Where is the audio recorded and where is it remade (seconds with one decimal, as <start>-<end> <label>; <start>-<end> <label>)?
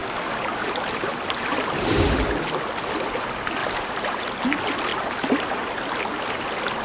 0.0-3.6 recorded; 3.6-4.3 remade; 4.3-6.8 recorded